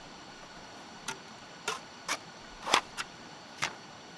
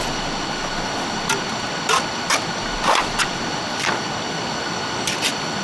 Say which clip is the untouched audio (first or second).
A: second